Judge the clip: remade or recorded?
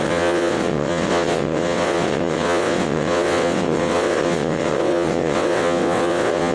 remade